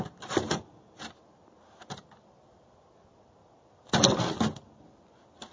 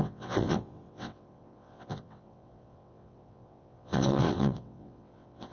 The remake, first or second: second